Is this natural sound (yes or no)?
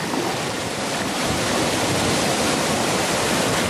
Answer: no